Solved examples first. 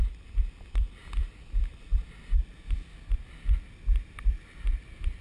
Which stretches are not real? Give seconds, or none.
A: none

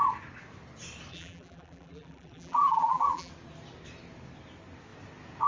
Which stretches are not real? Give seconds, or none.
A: 1.1-3.3 (vocoder, BigVGAN v2)

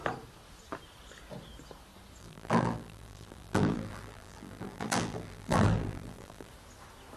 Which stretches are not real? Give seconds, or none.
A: 2.2-6.5 (vocoder, BigVGAN v2)

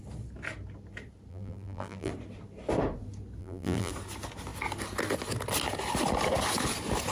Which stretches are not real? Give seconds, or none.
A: 1.3-2.1 (vocoder, BigVGAN v2); 3.4-3.9

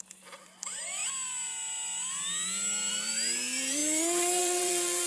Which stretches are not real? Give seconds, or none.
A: 0.0-1.0 (vocoder, BigVGAN v2); 2.9-3.8; 4.4-5.1

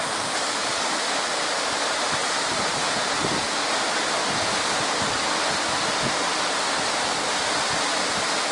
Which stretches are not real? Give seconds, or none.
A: 2.2-3.4 (vocoder, BigVGAN v2)

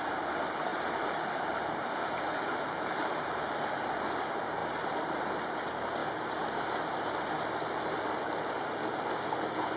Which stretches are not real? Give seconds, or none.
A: 0.7-3.9 (vocoder, BigVGAN v2)